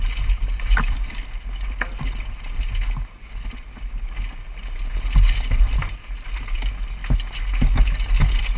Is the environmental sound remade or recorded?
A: recorded